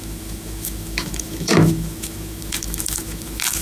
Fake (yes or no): yes